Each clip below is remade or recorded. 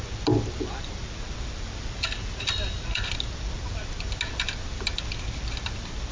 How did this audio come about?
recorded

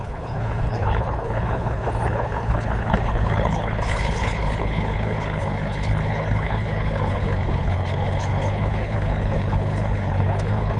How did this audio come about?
remade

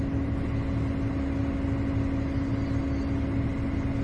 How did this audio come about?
recorded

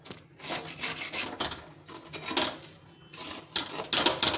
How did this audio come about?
recorded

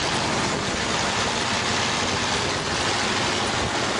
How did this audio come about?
recorded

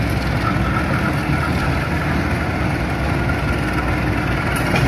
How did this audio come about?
recorded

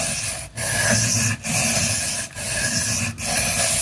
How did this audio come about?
recorded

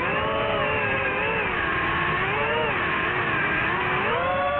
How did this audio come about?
recorded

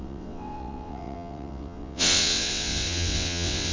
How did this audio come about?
remade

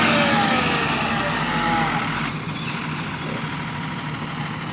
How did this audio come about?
recorded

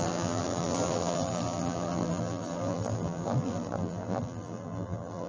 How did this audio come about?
remade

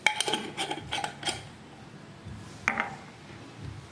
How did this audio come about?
recorded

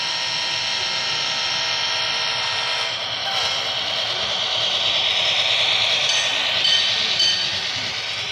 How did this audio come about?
remade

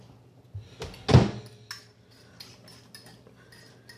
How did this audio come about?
recorded